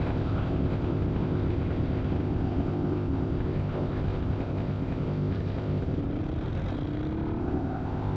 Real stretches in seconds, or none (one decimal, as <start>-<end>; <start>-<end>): 6.0-7.4

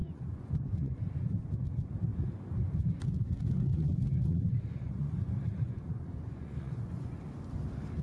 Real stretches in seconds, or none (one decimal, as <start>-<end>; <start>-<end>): 1.5-3.7; 7.2-8.0